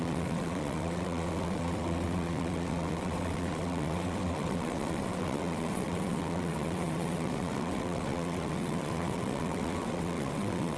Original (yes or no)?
no